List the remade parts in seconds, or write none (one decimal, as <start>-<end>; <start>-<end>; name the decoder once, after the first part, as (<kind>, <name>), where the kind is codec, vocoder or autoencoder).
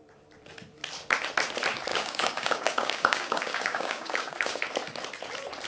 1.9-4.6 (codec, DAC)